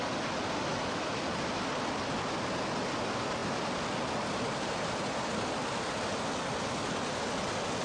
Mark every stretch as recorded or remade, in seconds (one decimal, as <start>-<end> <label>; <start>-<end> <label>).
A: 0.0-0.7 recorded; 0.7-1.2 remade; 1.2-7.8 recorded